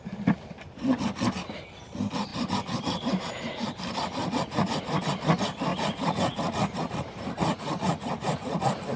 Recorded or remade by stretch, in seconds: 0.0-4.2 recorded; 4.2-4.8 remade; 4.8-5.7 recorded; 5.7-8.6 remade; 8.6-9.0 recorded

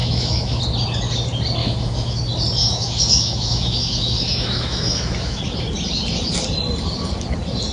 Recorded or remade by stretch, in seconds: 0.0-0.6 remade; 0.6-1.6 recorded; 1.6-2.2 remade; 2.2-2.6 recorded; 2.6-5.4 remade; 5.4-7.7 recorded

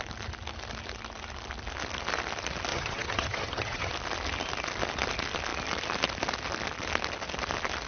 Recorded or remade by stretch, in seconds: 0.0-2.7 recorded; 2.7-3.9 remade; 3.9-7.9 recorded

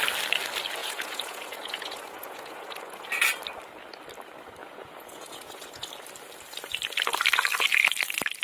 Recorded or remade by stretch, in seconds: 0.0-0.8 recorded; 0.8-3.1 remade; 3.1-4.6 recorded; 4.6-5.9 remade; 5.9-8.4 recorded

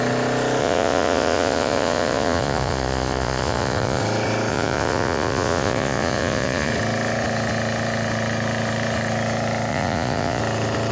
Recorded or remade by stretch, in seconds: 0.0-0.6 recorded; 0.6-4.0 remade; 4.0-4.5 recorded; 4.5-6.7 remade; 6.7-9.7 recorded; 9.7-10.4 remade; 10.4-10.9 recorded